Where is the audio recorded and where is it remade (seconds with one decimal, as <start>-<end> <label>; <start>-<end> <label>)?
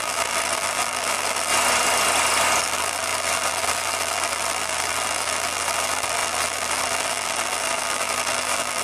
0.0-1.5 remade; 1.5-2.6 recorded; 2.6-8.8 remade